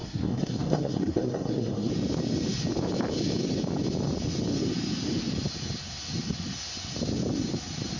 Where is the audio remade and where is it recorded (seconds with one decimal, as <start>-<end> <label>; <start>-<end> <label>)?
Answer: 0.0-1.9 remade; 1.9-8.0 recorded